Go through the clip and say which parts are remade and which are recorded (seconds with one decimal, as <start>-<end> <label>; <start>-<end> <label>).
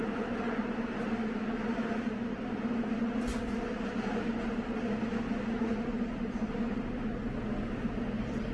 0.0-8.5 recorded